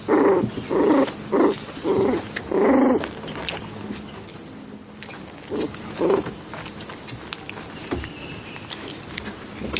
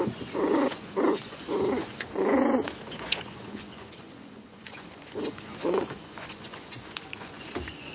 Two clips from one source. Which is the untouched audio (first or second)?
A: first